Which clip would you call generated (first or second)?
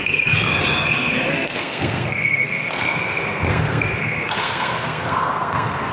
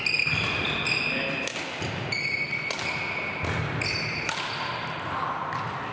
first